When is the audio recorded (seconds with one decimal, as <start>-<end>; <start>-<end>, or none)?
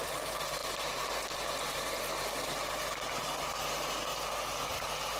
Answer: 0.0-5.2